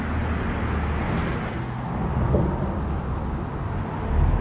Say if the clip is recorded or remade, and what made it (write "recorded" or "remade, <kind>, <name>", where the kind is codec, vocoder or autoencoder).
recorded